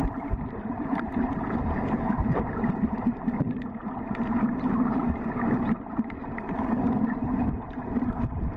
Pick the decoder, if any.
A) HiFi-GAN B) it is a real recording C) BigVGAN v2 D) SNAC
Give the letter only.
C